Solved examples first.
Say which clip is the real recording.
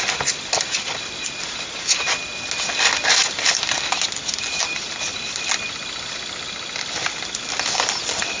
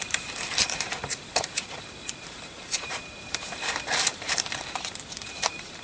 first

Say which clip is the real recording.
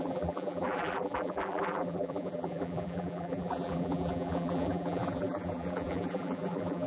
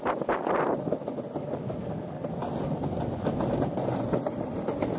second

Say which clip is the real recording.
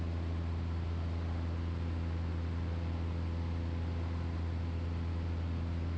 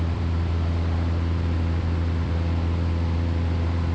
first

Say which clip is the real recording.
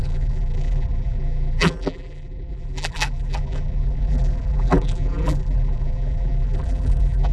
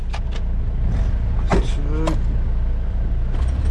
second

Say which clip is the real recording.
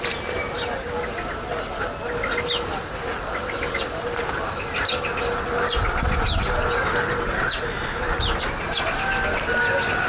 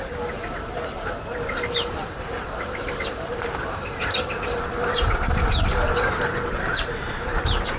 first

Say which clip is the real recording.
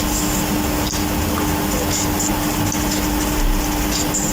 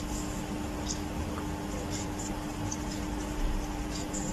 first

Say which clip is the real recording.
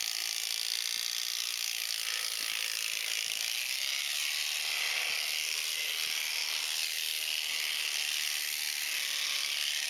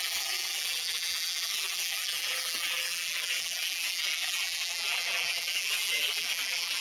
first